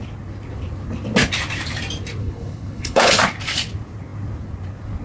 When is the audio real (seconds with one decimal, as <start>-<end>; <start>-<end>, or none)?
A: 0.0-2.2; 3.2-5.0

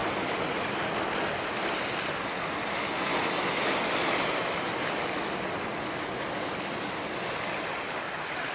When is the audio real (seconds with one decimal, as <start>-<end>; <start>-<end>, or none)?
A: 0.0-8.5

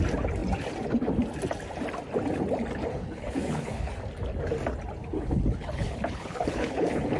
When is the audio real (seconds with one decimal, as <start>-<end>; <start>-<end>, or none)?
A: 0.0-2.9; 3.9-5.0